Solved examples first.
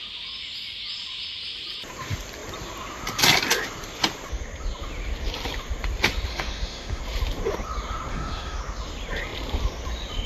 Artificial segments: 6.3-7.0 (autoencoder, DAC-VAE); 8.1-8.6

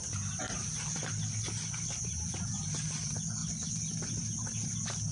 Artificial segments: none

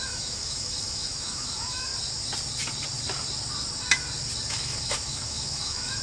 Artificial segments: 0.0-1.9 (autoencoder, DAC-VAE); 4.5-6.0

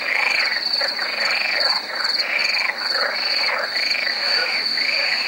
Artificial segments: 4.1-5.3 (autoencoder, DAC-VAE)

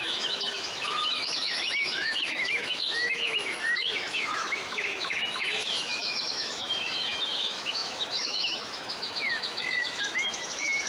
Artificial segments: 0.0-10.9 (autoencoder, DAC-VAE)

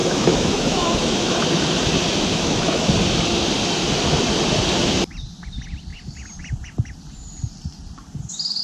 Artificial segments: 0.0-1.4 (autoencoder, DAC-VAE); 2.3-2.9

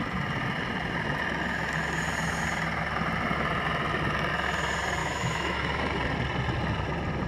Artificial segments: 5.0-5.8 (autoencoder, DAC-VAE)

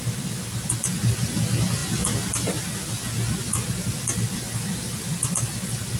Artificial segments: none